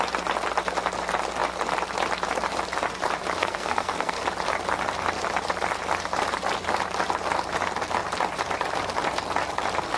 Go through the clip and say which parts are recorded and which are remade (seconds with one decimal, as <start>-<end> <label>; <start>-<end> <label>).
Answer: 0.0-3.4 recorded; 3.4-4.2 remade; 4.2-10.0 recorded